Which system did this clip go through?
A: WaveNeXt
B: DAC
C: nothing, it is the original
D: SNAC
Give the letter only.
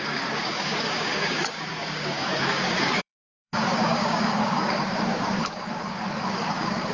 B